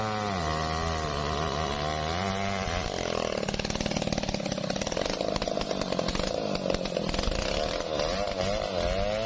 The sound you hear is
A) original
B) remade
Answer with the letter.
A